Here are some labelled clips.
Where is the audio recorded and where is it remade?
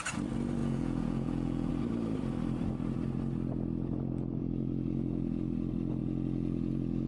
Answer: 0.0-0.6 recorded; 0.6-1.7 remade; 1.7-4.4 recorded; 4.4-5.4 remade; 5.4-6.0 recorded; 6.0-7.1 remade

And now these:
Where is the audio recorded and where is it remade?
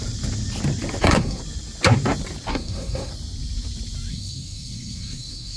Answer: 0.0-1.0 recorded; 1.0-1.4 remade; 1.4-2.5 recorded; 2.5-3.1 remade; 3.1-4.1 recorded; 4.1-5.6 remade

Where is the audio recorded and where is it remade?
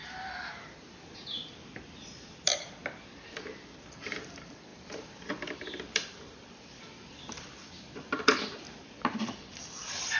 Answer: 0.0-2.5 remade; 2.5-4.7 recorded; 4.7-9.0 remade; 9.0-10.2 recorded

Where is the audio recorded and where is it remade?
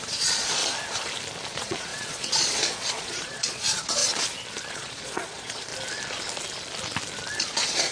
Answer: 0.0-0.6 remade; 0.6-1.5 recorded; 1.5-4.0 remade; 4.0-4.7 recorded; 4.7-5.7 remade; 5.7-7.4 recorded; 7.4-7.9 remade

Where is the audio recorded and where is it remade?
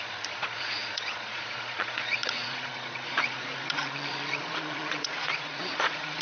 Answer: 0.0-6.2 remade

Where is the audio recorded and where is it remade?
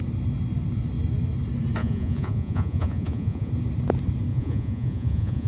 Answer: 0.0-1.8 recorded; 1.8-3.5 remade; 3.5-4.3 recorded; 4.3-5.5 remade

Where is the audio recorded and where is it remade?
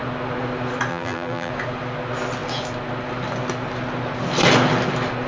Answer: 0.0-0.9 recorded; 0.9-1.5 remade; 1.5-5.3 recorded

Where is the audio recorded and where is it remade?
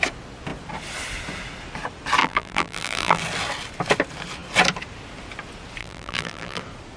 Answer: 0.0-2.2 recorded; 2.2-3.2 remade; 3.2-5.8 recorded; 5.8-6.6 remade; 6.6-7.0 recorded